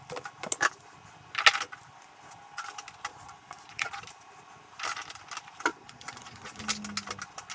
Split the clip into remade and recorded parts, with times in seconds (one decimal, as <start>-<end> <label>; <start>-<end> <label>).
0.0-3.1 recorded; 3.1-4.0 remade; 4.0-5.7 recorded; 5.7-6.6 remade; 6.6-7.5 recorded